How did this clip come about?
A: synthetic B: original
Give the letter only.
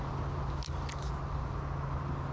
B